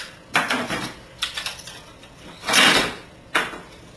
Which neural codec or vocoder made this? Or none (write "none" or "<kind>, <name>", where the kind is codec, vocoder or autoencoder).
none